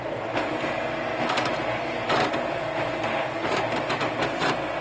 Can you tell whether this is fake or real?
real